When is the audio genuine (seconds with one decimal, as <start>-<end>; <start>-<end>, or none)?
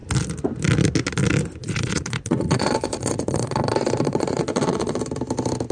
0.0-1.6; 5.0-5.7